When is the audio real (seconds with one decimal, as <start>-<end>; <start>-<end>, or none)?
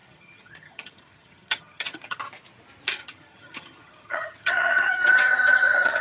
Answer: 2.2-3.0